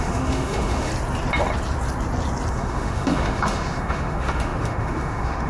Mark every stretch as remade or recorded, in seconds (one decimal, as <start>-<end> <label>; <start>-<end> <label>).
0.0-0.9 remade; 0.9-2.5 recorded; 2.5-5.5 remade